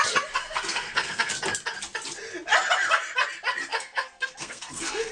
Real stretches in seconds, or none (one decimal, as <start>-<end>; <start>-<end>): 0.0-0.4; 1.3-3.7